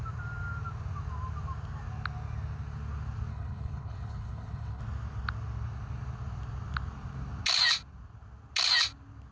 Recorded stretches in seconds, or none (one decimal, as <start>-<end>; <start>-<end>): 0.0-3.3; 4.8-9.3